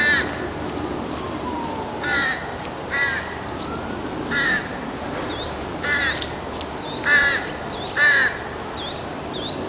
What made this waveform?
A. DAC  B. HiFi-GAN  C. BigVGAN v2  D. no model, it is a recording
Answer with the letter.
D